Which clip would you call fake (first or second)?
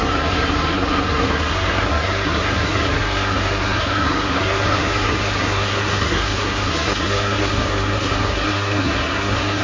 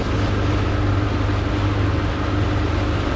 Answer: first